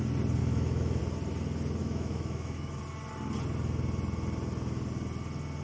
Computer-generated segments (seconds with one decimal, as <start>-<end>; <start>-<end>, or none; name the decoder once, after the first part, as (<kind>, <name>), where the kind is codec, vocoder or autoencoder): 0.4-1.0 (autoencoder, DAC-VAE); 1.8-2.8